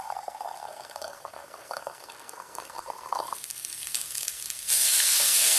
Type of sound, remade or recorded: remade